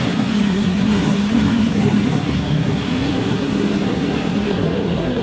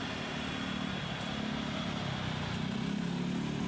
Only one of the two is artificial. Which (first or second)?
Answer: first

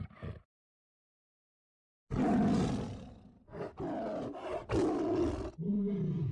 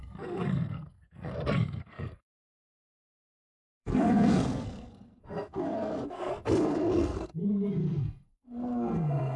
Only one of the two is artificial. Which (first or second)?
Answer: second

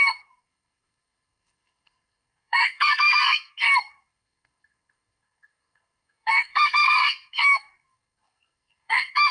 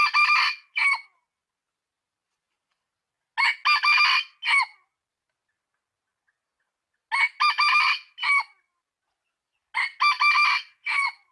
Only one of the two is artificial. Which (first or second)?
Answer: first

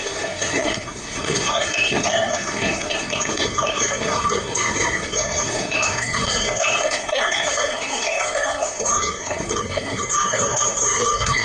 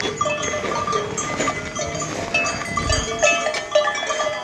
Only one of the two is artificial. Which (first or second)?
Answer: first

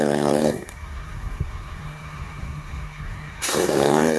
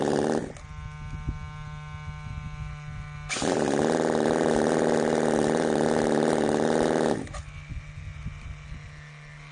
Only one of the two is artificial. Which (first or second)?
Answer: first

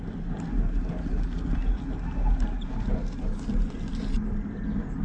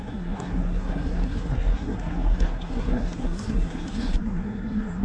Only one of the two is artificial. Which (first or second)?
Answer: second